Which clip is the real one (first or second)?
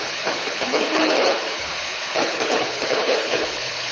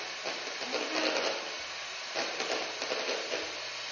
second